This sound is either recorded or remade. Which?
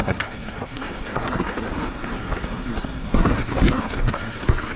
remade